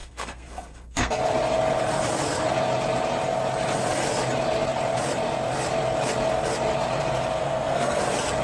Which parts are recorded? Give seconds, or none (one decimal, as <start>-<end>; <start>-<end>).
1.2-7.4; 8.0-8.4